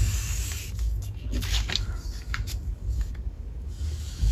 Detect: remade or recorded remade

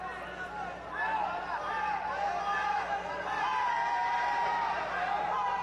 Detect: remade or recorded recorded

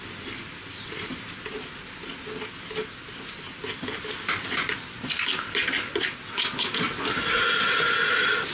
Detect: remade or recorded recorded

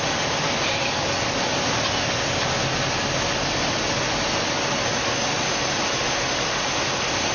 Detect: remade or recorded recorded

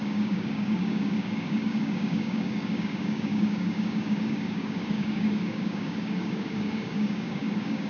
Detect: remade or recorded remade